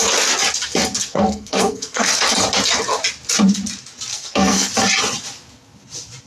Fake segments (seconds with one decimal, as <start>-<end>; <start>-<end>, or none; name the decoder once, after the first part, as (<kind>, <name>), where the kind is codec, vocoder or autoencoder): 1.0-2.1 (codec, SNAC); 4.1-4.7